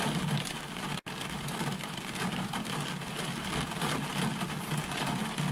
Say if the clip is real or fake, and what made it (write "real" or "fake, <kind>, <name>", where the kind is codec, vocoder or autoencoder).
real